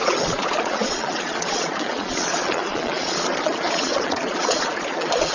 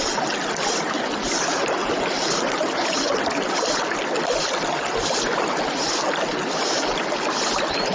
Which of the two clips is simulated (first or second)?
first